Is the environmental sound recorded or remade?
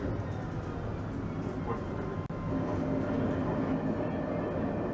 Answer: recorded